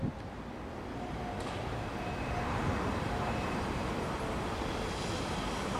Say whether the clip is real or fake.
real